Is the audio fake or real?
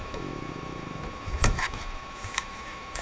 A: fake